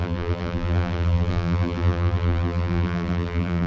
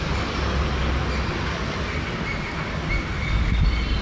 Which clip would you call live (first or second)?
second